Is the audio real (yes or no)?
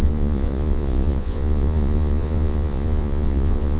no